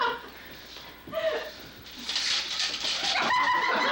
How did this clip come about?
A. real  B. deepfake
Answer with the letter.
B